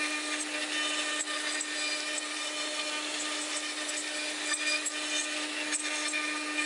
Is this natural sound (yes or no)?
yes